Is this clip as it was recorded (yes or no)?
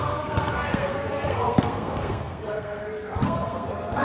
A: no